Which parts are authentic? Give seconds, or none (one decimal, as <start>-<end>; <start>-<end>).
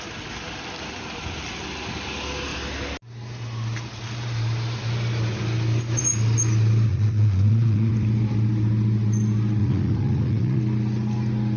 0.0-6.9; 7.9-9.6; 10.6-11.6